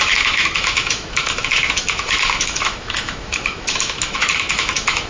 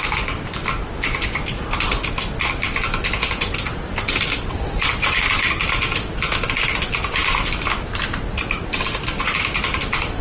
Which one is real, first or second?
second